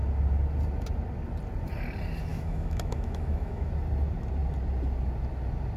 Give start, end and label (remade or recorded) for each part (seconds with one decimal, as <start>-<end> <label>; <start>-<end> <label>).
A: 0.0-2.3 recorded; 2.3-3.7 remade; 3.7-5.8 recorded